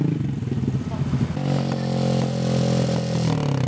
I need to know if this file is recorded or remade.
recorded